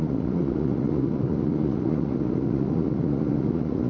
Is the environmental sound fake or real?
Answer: fake